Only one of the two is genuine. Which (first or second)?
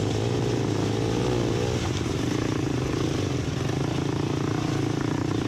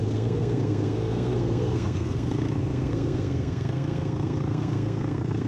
first